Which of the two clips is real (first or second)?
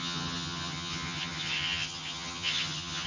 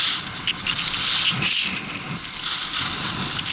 second